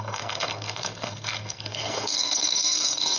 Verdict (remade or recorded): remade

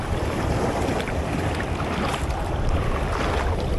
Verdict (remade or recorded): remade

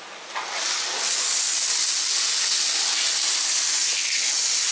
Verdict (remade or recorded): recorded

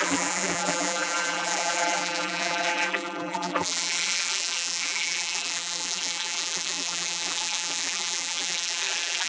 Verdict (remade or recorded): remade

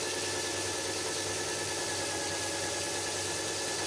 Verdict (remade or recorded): recorded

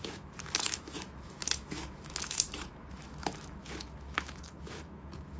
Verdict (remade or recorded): remade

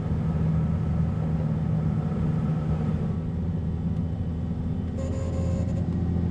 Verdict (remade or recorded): recorded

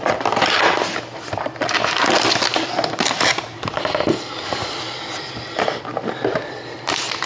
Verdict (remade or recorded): remade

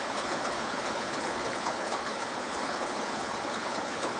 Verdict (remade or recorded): remade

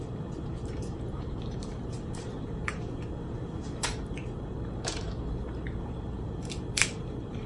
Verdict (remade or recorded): remade